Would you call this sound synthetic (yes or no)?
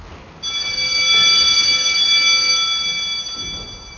no